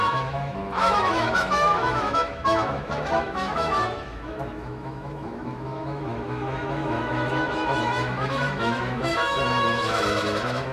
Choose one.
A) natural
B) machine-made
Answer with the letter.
B